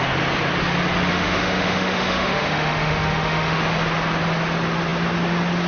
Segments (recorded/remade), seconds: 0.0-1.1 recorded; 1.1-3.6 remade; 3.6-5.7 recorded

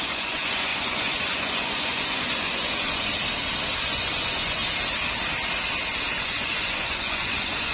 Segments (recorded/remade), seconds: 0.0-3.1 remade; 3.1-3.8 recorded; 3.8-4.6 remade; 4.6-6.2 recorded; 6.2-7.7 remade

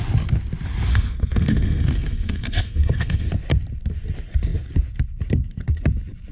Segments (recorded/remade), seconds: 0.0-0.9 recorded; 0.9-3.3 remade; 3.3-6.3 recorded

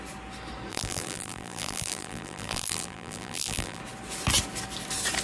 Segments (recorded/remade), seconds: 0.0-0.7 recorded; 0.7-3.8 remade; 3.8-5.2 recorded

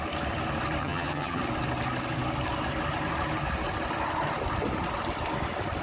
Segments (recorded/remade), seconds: 0.0-0.8 recorded; 0.8-1.4 remade; 1.4-5.8 recorded